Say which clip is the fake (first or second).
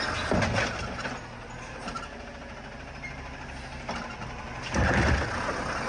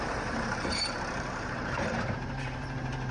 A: second